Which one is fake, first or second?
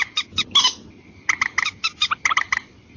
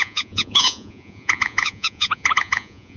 second